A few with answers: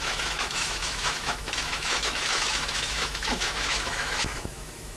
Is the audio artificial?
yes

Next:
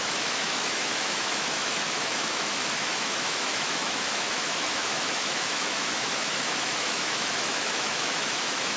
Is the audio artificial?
yes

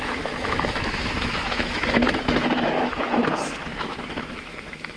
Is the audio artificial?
yes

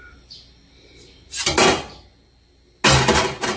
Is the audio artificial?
no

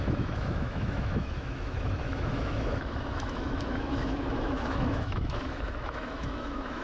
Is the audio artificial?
yes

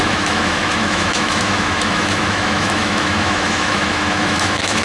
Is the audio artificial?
yes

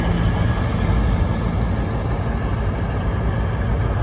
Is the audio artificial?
no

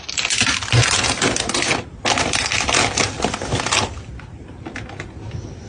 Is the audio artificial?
no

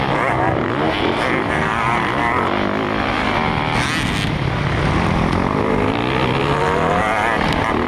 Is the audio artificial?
no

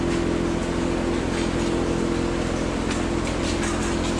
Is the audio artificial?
no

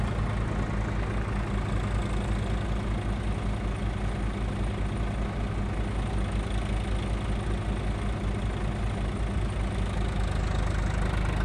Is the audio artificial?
no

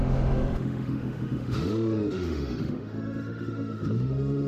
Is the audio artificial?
yes